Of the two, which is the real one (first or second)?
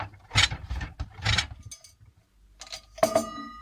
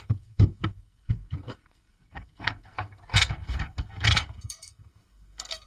first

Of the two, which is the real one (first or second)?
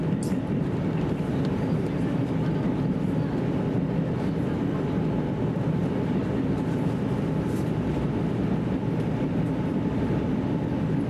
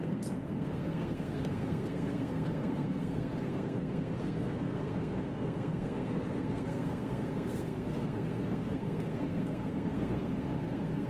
first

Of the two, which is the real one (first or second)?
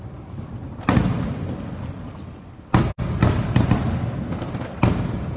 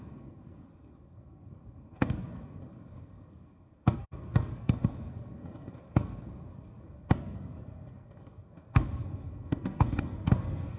first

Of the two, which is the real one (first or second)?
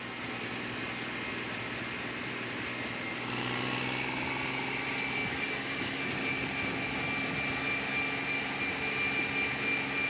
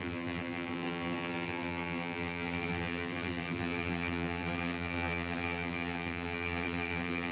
first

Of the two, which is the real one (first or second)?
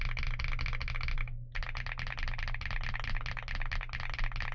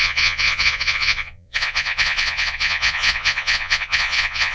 first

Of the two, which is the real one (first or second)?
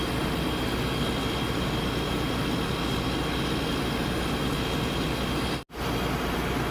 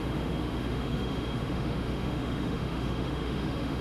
first